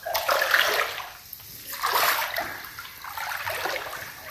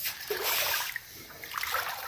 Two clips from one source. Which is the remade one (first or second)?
second